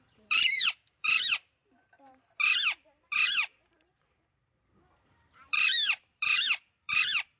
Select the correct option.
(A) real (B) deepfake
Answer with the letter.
B